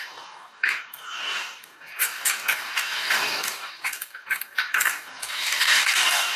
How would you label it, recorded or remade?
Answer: remade